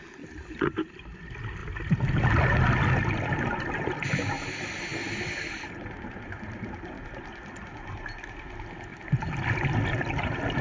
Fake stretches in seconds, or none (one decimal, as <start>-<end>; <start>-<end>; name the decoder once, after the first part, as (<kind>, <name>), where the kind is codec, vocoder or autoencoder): none